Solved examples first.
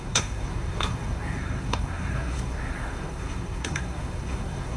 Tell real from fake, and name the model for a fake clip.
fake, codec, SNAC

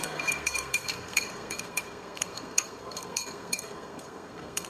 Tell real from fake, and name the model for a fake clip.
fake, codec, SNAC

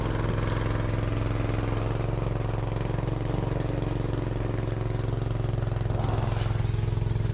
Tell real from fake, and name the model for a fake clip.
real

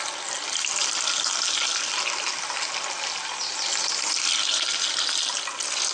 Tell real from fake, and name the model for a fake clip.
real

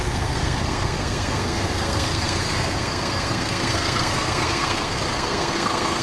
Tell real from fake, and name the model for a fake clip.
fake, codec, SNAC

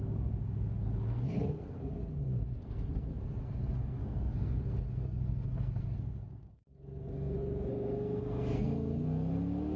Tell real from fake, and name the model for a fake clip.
fake, codec, SNAC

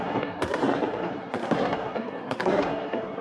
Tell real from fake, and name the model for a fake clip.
fake, codec, SNAC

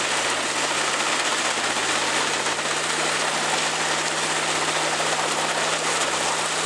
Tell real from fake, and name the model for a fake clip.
real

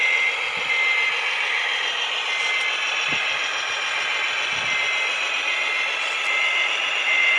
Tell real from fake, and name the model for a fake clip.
real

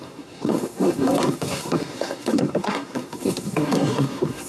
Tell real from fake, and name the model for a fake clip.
fake, codec, SNAC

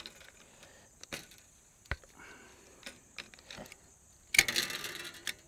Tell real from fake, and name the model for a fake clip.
real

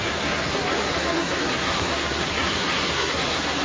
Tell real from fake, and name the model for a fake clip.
fake, codec, SNAC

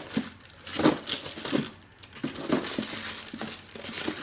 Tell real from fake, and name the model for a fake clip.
real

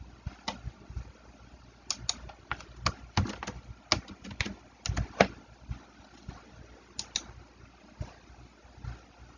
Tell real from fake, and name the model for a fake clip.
real